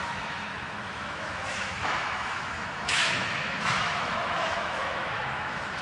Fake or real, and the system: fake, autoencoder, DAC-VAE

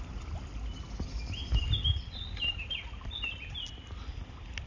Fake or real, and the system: real